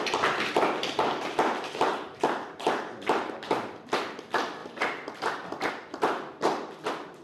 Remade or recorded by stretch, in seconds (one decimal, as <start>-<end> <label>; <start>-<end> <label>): 0.0-7.2 recorded